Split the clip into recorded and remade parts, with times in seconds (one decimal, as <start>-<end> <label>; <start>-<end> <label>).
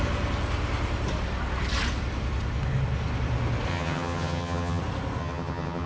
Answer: 0.0-3.7 recorded; 3.7-4.8 remade; 4.8-5.2 recorded; 5.2-5.9 remade